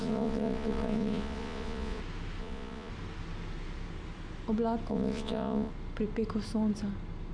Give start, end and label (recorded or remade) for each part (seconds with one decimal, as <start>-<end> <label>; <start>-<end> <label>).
0.0-2.0 remade; 2.0-2.4 recorded; 2.4-2.9 remade; 2.9-4.9 recorded; 4.9-5.7 remade; 5.7-7.3 recorded